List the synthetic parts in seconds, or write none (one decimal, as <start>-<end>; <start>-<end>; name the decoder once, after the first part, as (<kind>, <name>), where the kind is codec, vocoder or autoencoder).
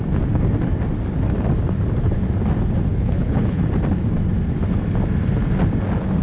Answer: 2.9-3.6 (codec, HILCodec)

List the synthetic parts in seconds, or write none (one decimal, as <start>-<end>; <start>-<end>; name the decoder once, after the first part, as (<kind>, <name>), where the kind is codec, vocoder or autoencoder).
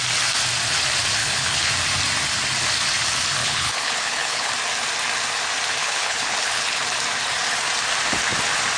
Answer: 1.2-1.7 (codec, HILCodec); 3.4-4.5; 5.8-6.8